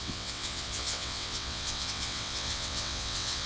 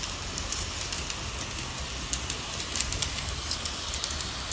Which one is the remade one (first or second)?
first